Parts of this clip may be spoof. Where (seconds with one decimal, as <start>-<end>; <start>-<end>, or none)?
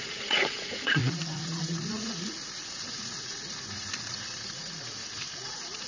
0.0-5.9